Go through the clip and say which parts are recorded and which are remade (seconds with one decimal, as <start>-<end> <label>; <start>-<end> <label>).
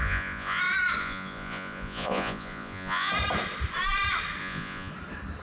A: 0.0-0.6 remade; 0.6-1.0 recorded; 1.0-3.1 remade; 3.1-4.4 recorded; 4.4-4.9 remade; 4.9-5.4 recorded